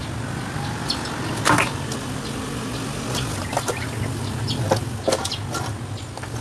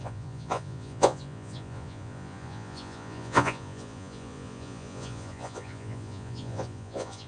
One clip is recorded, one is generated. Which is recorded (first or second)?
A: first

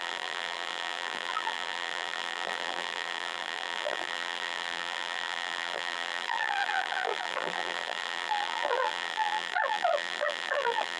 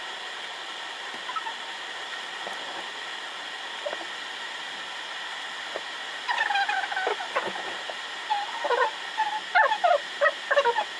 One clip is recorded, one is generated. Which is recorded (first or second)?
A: second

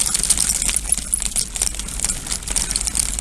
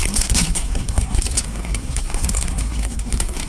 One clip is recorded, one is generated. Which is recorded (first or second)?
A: first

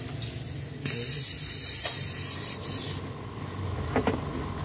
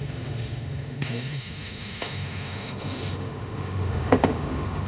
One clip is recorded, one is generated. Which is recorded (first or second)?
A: first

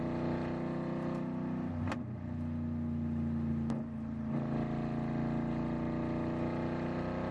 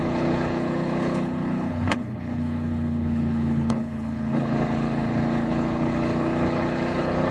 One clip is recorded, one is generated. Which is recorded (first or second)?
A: first